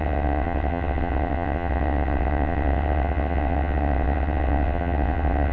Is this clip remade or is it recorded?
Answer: remade